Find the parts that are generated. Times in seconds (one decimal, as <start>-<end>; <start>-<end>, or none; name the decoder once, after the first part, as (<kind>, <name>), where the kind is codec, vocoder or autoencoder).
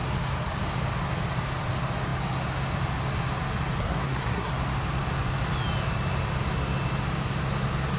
3.8-4.5 (codec, SNAC)